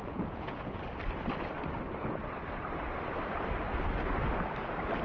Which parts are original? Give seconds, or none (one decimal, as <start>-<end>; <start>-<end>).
0.8-5.0